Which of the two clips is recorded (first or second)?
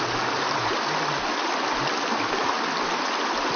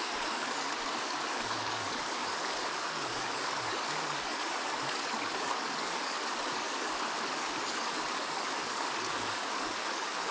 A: first